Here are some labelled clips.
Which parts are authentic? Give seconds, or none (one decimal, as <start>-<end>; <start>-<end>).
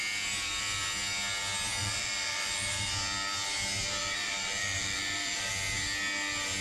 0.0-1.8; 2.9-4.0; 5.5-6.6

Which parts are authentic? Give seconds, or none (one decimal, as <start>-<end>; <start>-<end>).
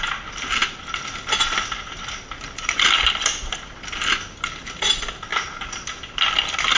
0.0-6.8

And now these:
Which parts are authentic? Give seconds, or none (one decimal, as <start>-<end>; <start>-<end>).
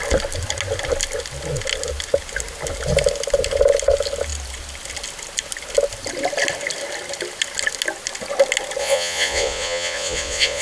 0.0-8.8